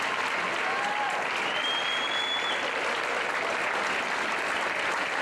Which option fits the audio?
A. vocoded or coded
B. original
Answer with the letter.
B